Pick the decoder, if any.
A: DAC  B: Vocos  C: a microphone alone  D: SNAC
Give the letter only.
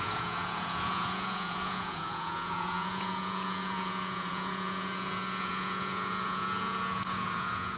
B